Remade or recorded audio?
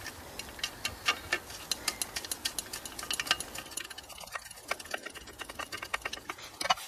recorded